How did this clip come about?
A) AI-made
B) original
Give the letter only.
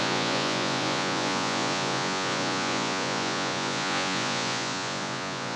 A